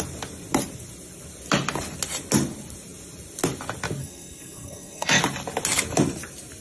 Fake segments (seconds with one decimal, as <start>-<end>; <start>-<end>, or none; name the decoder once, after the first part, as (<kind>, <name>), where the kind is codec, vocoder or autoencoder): 4.0-5.2 (codec, SNAC)